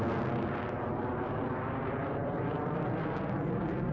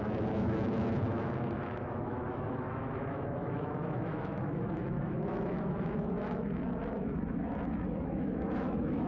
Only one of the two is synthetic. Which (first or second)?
second